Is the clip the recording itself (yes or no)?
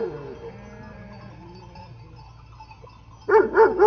yes